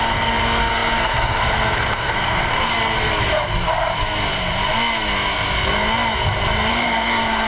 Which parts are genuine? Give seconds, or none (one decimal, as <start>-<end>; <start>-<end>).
2.7-6.7